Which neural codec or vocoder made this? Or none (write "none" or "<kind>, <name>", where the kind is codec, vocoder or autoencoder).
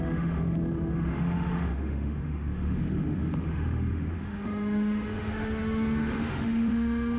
autoencoder, DAC-VAE